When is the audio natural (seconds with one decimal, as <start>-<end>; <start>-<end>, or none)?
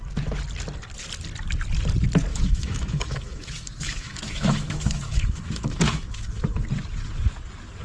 0.0-2.3; 6.6-7.8